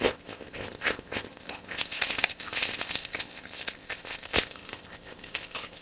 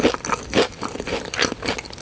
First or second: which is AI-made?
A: first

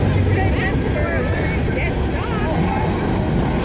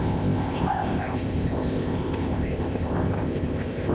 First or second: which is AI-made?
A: second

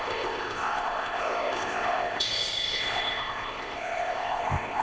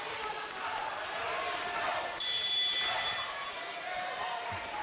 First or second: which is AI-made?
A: first